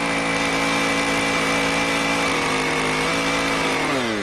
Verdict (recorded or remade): recorded